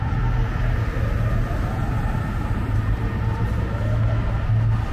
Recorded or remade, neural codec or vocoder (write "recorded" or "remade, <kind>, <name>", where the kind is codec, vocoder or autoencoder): recorded